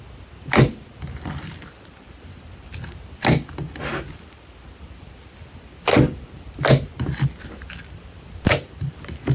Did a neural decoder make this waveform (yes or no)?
no